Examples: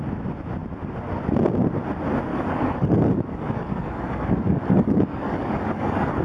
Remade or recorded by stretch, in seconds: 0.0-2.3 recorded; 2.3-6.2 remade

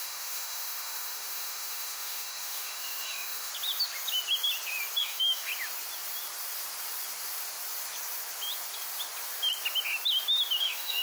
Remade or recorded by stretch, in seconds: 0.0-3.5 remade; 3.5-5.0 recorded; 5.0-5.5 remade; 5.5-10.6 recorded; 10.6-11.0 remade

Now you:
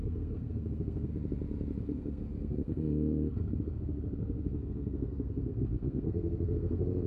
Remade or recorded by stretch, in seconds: 0.0-1.1 remade; 1.1-1.8 recorded; 1.8-7.1 remade

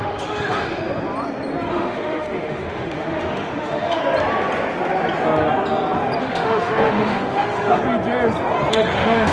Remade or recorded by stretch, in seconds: 0.0-0.8 remade; 0.8-1.7 recorded; 1.7-4.0 remade; 4.0-6.2 recorded; 6.2-7.8 remade; 7.8-8.7 recorded; 8.7-9.3 remade

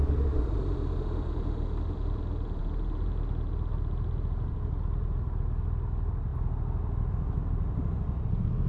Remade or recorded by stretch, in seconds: 0.0-8.7 recorded

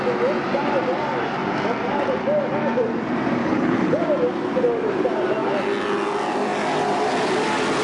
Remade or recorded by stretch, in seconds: 0.0-3.4 recorded; 3.4-4.0 remade; 4.0-7.8 recorded